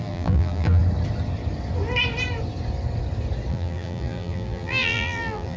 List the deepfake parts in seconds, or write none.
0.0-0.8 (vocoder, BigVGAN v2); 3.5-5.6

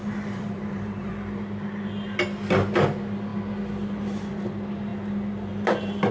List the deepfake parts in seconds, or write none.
0.0-1.1 (vocoder, BigVGAN v2)